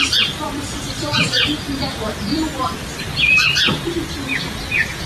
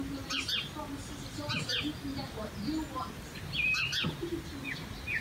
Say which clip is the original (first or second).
second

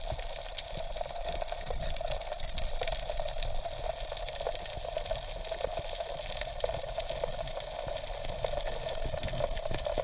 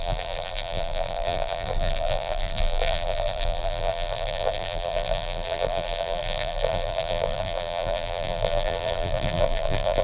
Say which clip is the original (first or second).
first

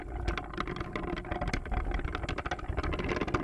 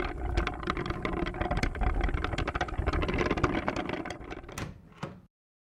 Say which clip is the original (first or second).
first